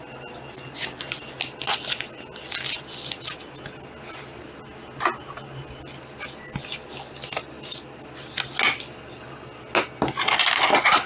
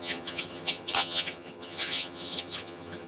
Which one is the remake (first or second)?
second